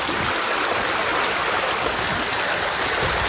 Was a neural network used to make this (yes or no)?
no